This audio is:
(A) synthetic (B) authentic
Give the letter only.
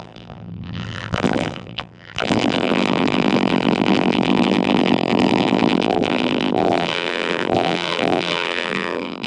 A